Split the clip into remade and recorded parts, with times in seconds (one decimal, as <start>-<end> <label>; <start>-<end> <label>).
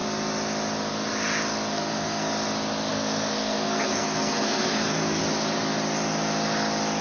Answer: 0.0-1.7 recorded; 1.7-2.3 remade; 2.3-2.9 recorded; 2.9-5.2 remade; 5.2-7.0 recorded